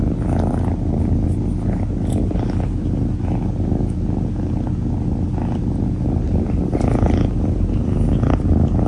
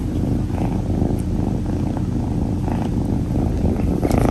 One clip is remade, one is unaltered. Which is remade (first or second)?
second